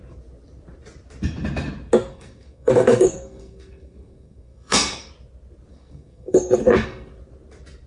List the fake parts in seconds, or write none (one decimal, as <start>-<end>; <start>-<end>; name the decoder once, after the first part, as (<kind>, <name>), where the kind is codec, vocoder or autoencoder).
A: 2.1-5.1 (codec, SNAC); 5.7-7.1